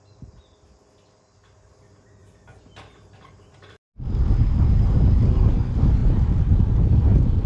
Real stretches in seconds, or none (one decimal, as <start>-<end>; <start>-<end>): 0.0-7.5